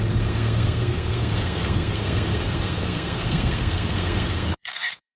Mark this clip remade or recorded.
remade